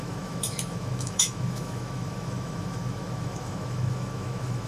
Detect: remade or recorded remade